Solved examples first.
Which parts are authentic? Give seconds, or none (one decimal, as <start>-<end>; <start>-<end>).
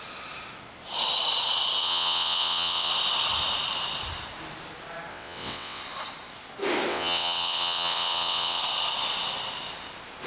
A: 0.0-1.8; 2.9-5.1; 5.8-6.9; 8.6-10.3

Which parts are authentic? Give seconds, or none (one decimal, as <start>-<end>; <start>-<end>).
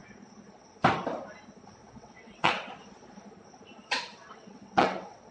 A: 0.0-1.8; 2.7-3.8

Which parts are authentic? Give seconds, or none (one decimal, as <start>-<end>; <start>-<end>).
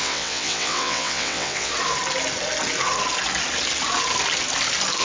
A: 1.7-5.0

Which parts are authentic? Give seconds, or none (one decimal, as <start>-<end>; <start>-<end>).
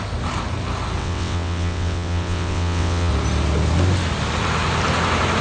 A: 0.0-1.0; 3.1-5.4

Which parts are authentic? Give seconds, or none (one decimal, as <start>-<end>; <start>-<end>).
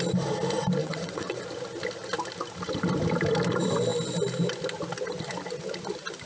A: 0.0-0.8; 1.4-6.3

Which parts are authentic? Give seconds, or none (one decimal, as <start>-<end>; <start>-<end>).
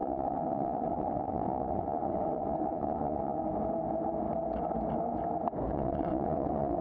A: 3.4-5.7